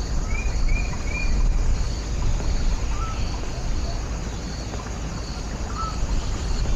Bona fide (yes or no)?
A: yes